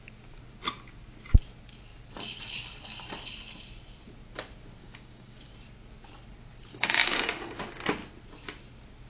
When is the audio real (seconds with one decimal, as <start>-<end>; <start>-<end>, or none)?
0.0-4.8; 5.5-6.7; 7.6-9.1